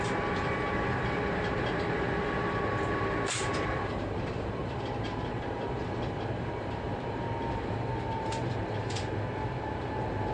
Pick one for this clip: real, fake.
fake